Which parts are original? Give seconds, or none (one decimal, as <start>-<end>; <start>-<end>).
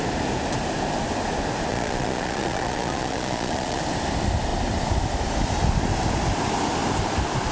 0.0-1.7; 3.8-7.5